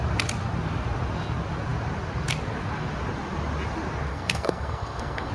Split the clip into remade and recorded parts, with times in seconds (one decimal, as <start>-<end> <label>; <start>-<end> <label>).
0.0-4.1 recorded; 4.1-5.3 remade